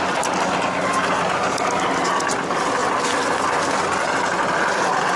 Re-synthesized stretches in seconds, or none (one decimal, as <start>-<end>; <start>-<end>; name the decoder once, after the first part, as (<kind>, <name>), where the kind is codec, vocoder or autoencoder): none